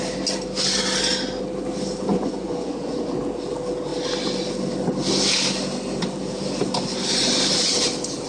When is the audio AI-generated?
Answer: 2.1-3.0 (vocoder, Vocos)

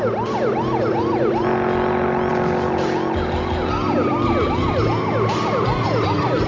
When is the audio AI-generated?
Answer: none

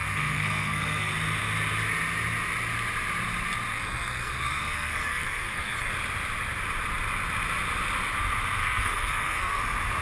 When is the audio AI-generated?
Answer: 0.0-1.1 (codec, SNAC); 3.7-5.9; 8.6-9.6

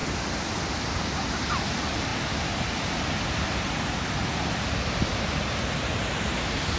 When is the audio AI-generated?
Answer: none

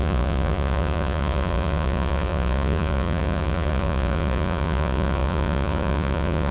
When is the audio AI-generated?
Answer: 0.0-6.5 (vocoder, Vocos)